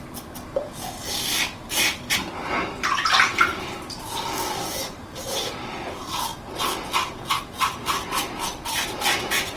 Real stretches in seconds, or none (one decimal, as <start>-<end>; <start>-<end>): 6.3-7.4